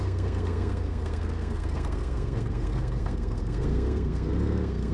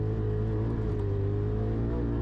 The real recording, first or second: second